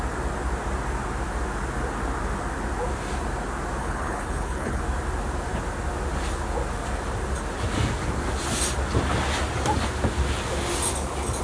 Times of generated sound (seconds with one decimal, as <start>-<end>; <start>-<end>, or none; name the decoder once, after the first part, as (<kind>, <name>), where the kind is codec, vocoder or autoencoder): 3.8-4.8 (codec, HILCodec)